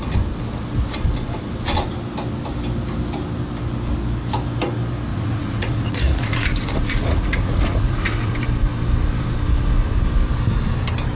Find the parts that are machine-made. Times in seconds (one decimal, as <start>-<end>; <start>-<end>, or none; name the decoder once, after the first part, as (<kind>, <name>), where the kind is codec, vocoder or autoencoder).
5.1-8.3 (vocoder, Vocos)